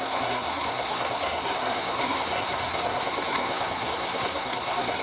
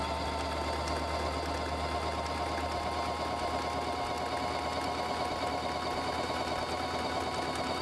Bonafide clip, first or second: second